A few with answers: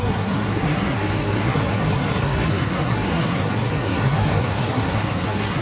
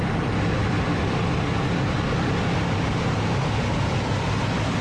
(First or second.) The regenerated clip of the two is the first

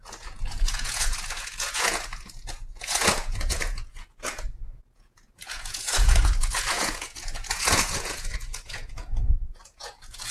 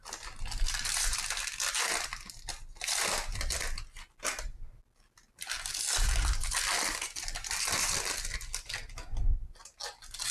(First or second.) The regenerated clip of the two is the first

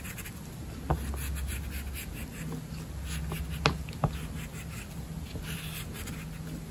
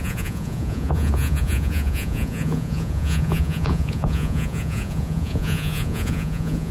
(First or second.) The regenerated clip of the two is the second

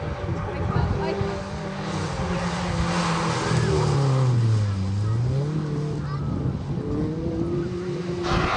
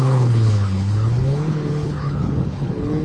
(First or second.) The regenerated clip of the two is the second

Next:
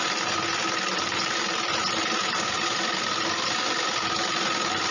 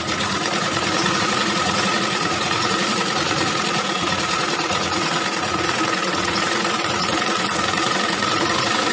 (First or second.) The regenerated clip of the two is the second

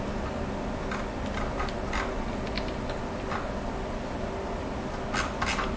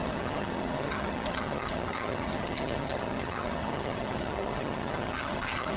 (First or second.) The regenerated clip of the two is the second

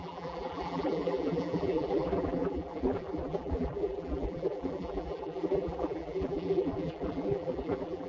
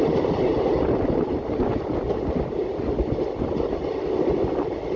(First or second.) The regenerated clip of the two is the first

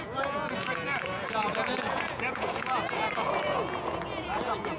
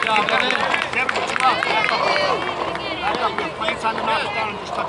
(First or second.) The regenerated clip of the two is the first